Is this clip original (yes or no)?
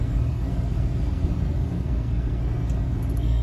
no